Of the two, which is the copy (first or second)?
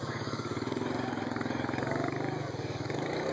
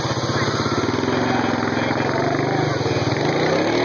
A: first